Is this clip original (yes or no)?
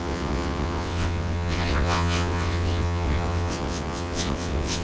no